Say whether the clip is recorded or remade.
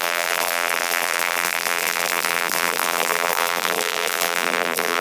remade